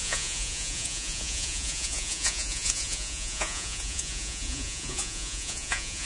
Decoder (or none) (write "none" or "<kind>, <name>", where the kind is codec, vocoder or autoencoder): vocoder, Vocos